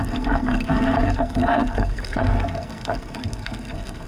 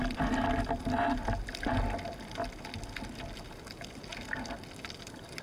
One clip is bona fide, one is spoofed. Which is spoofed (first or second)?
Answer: first